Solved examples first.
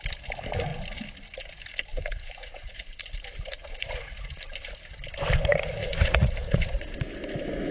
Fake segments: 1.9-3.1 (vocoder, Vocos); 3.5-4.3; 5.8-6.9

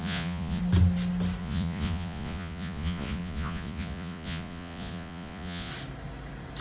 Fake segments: 0.0-0.6 (vocoder, Vocos); 1.4-5.7

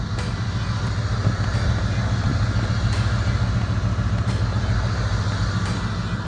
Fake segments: none

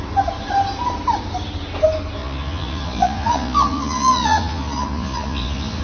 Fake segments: 2.2-5.8 (vocoder, Vocos)

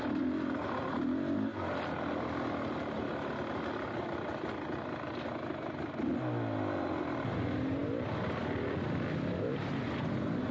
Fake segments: none

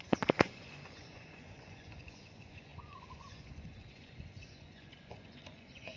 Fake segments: 0.0-6.0 (vocoder, Vocos)

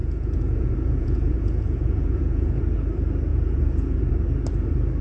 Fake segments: 0.0-2.6 (vocoder, Vocos); 3.3-4.1